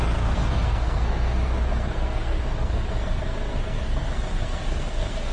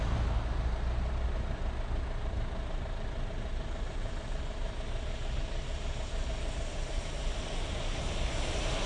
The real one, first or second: second